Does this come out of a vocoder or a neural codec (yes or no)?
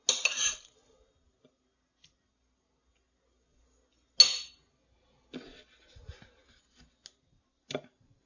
no